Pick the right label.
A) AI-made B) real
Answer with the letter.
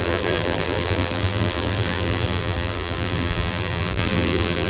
A